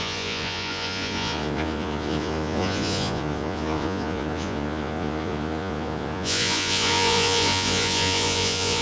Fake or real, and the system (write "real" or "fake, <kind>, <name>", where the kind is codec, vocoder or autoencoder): fake, vocoder, Vocos